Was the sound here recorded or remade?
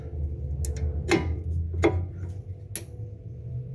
recorded